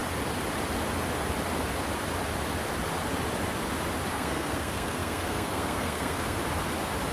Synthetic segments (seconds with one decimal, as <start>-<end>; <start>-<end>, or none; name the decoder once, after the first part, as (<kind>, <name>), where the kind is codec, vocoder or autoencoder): 4.1-6.4 (codec, SNAC)